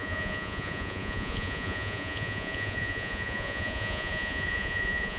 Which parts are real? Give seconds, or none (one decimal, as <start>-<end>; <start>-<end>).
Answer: none

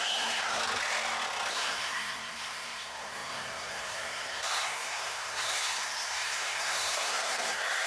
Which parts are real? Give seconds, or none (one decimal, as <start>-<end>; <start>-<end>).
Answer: 0.6-1.5

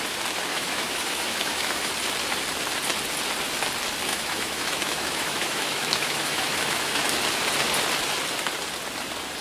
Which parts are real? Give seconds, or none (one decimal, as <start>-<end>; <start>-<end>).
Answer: 0.0-0.5; 1.9-4.1; 7.2-9.4

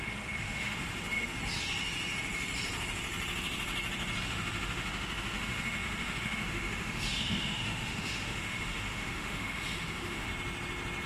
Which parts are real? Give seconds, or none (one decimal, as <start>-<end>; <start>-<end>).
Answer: 1.4-4.2; 10.3-11.1

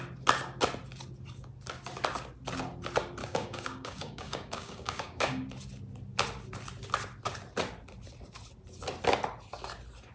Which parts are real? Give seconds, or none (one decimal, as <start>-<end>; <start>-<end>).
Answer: 0.0-3.2; 5.5-10.1

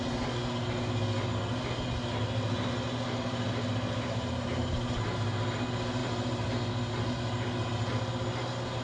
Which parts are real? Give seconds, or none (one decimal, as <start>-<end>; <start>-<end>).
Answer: 0.0-8.8